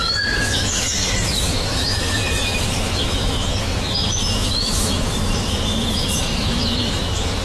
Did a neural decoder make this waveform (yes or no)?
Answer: yes